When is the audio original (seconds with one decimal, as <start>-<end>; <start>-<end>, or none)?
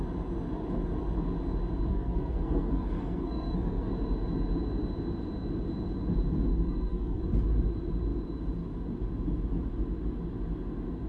0.0-1.9; 3.9-6.5; 7.2-11.1